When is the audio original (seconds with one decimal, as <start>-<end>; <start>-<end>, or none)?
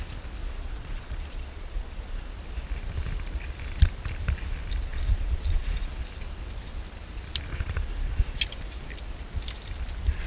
0.0-0.4; 2.3-4.9; 6.0-7.5; 8.4-10.3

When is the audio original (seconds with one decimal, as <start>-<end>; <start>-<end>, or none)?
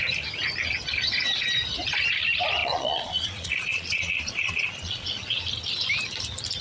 0.0-2.6; 5.4-6.6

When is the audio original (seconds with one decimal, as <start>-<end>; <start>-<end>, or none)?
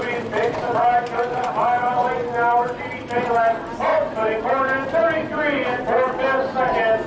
0.0-7.1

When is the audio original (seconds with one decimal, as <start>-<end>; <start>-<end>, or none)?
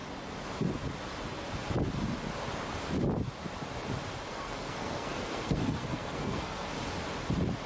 0.0-4.3; 6.7-7.7